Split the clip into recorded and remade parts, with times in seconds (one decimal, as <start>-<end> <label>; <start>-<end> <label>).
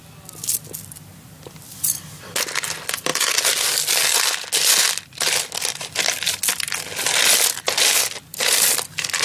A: 0.0-9.2 recorded